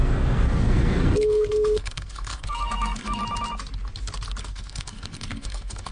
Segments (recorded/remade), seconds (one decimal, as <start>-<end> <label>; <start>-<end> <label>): 0.0-3.2 remade; 3.2-4.4 recorded; 4.4-5.9 remade